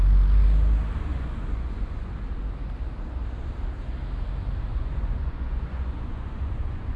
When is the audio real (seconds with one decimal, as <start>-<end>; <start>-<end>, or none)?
0.0-1.1; 2.1-4.7